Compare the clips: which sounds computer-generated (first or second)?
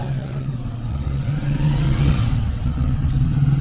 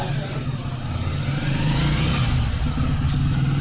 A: first